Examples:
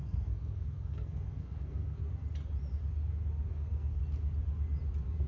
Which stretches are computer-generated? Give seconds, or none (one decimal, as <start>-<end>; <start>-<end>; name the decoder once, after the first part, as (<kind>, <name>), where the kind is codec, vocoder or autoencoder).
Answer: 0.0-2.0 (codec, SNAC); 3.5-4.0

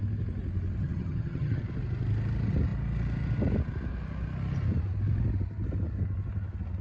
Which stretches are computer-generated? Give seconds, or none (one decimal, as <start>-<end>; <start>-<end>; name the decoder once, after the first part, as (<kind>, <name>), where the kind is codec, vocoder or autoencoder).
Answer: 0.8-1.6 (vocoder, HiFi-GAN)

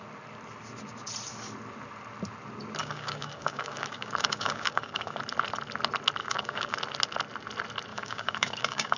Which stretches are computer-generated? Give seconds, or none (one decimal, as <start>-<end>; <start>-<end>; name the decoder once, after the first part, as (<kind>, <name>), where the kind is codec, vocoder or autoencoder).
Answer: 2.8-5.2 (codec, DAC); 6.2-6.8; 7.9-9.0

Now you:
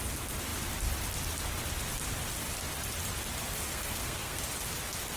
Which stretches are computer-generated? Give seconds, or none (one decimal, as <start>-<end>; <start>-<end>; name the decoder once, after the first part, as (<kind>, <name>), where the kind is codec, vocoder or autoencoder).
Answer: 3.7-4.4 (codec, SNAC)

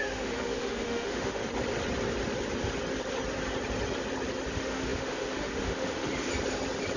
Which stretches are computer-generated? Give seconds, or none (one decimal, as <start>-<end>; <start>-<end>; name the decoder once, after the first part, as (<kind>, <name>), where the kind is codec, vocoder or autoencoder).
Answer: 0.0-1.4 (autoencoder, DAC-VAE); 4.5-6.3

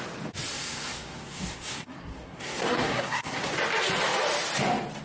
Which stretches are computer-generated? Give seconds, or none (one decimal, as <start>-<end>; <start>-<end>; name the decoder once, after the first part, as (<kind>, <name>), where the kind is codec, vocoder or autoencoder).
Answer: 0.5-3.5 (codec, SNAC)

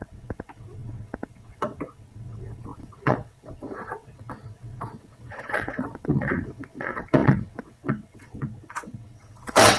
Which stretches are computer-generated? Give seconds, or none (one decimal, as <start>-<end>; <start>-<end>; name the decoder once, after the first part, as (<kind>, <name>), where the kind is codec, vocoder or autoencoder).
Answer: 0.0-9.8 (vocoder, WaveNeXt)

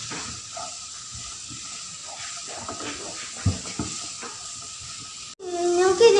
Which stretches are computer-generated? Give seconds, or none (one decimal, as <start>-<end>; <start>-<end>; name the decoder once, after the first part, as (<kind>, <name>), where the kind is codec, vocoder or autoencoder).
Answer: none